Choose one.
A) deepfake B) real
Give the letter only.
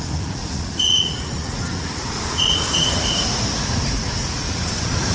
A